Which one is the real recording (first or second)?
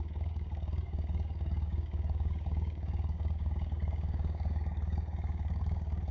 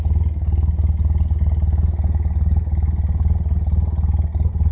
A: second